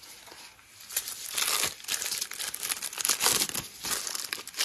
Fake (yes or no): no